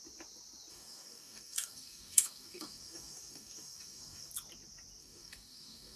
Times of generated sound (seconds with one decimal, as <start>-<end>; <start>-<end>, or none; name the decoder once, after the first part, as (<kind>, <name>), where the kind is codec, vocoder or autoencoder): 0.7-4.3 (codec, DAC); 5.0-6.0